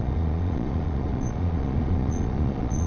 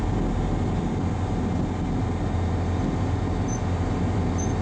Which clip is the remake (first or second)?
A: first